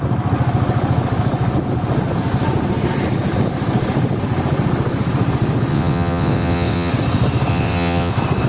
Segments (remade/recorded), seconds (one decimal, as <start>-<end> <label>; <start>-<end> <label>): 0.0-5.7 recorded; 5.7-6.9 remade; 6.9-7.5 recorded; 7.5-8.1 remade; 8.1-8.5 recorded